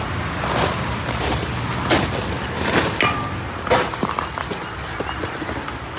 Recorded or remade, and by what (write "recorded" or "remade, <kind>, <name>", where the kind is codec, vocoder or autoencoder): recorded